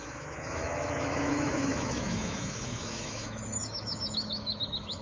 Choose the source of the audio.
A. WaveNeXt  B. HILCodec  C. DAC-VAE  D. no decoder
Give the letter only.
C